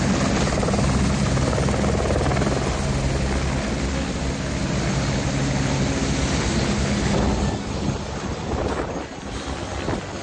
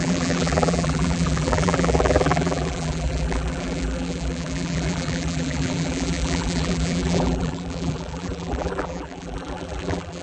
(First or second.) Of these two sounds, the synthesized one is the second